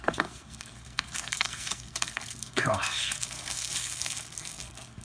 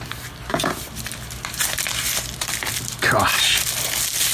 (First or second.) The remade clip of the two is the first